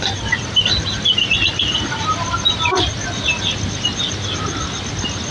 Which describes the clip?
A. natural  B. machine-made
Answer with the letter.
A